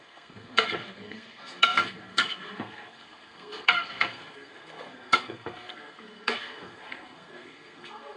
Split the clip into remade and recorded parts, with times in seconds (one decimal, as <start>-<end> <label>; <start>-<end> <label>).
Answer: 0.0-8.2 remade